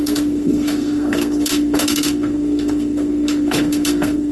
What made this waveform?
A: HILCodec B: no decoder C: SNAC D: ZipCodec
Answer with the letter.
C